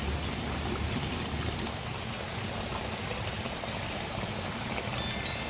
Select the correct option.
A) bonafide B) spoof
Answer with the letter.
A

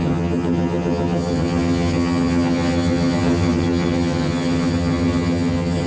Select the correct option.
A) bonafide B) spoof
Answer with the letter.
B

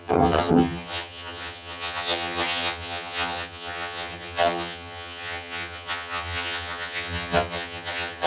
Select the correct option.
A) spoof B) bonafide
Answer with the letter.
A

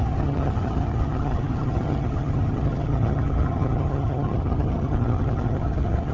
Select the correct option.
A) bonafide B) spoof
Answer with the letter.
B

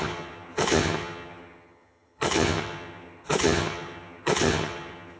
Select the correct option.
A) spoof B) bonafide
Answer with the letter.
A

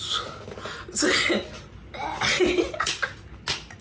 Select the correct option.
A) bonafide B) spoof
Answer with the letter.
A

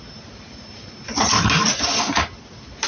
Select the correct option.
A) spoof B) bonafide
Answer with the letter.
B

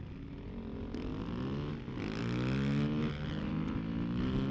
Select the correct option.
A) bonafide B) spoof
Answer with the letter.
A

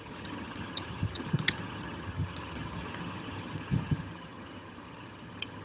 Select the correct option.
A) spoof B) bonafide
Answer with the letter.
A